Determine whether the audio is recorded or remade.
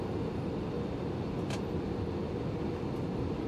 recorded